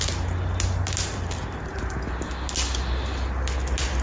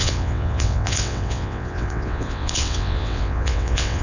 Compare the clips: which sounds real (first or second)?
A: first